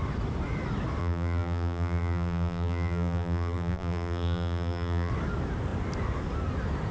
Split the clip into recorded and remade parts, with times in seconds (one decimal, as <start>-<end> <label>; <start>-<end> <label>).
0.0-1.0 recorded; 1.0-5.1 remade; 5.1-6.9 recorded